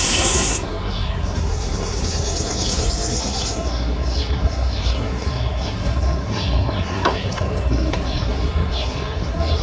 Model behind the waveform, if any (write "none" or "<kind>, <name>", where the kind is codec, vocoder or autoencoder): codec, SNAC